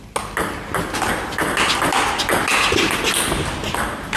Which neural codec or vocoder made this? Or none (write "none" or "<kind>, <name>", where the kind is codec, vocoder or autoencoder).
none